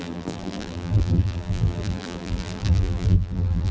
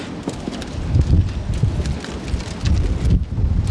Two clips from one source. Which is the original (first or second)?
second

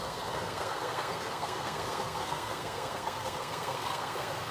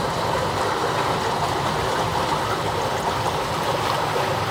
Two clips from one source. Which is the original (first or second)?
second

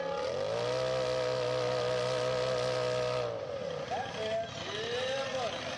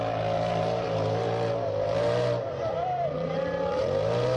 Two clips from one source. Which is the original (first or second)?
first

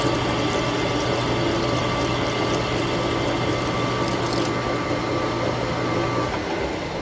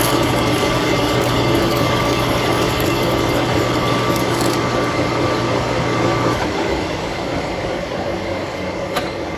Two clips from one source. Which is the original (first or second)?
first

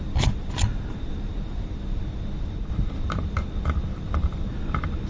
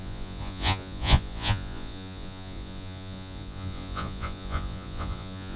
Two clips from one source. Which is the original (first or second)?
first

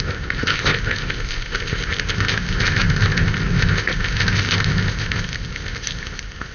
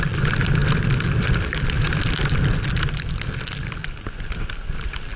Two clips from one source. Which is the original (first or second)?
second